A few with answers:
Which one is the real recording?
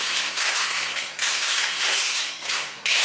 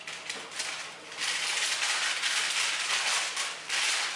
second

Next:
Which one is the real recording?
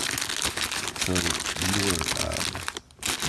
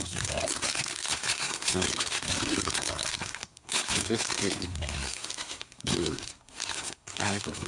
first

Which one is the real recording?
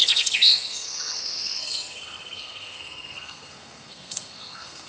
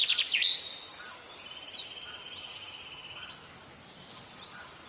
second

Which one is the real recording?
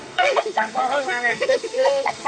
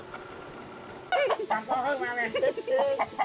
second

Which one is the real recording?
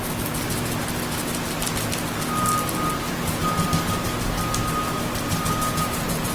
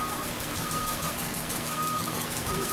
first